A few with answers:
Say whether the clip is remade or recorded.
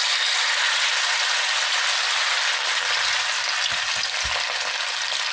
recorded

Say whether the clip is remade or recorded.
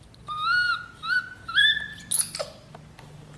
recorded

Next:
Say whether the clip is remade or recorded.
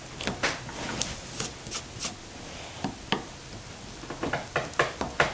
recorded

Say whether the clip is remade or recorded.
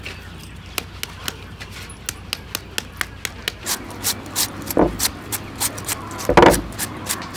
recorded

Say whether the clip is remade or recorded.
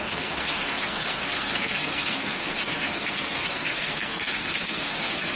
remade